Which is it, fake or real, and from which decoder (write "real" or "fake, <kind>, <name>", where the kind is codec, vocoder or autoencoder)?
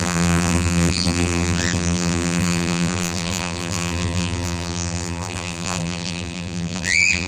fake, vocoder, BigVGAN v2